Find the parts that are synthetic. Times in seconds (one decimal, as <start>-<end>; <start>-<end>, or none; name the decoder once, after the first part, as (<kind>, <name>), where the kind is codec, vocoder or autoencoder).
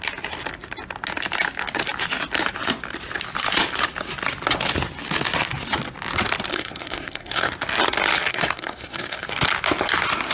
6.5-7.5 (codec, SNAC); 8.3-9.3